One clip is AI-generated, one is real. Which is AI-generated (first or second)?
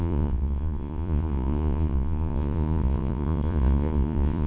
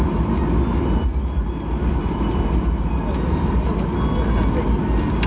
first